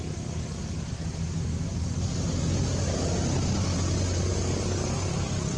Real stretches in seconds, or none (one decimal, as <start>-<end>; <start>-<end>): 0.0-5.6